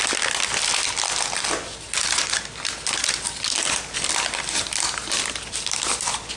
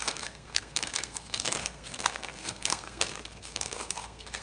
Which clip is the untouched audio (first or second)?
first